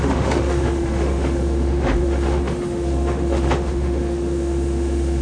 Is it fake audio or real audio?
fake